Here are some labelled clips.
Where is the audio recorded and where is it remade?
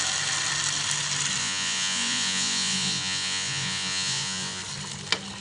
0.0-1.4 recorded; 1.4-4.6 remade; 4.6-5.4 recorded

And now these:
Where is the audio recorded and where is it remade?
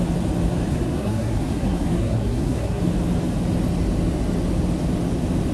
0.0-0.7 recorded; 0.7-2.8 remade; 2.8-5.5 recorded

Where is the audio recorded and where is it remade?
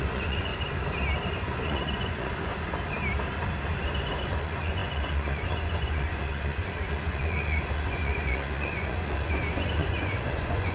0.0-0.5 remade; 0.5-1.3 recorded; 1.3-2.5 remade; 2.5-4.2 recorded; 4.2-10.7 remade